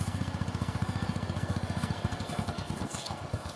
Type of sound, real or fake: fake